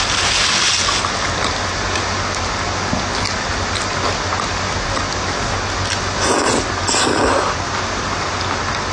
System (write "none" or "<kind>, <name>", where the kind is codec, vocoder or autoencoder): none